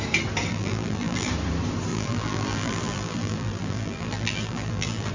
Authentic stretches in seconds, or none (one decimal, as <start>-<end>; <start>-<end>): 0.0-0.5; 1.3-1.9